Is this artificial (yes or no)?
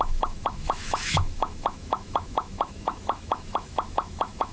yes